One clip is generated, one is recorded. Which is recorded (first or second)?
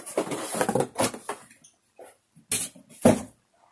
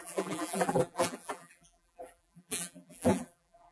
first